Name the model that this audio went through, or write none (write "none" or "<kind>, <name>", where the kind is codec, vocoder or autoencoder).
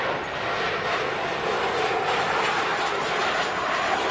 none